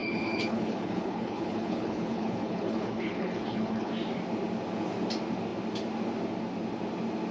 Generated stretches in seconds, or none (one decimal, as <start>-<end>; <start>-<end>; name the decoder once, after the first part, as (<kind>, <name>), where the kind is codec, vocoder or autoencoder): 0.0-3.9 (codec, HILCodec)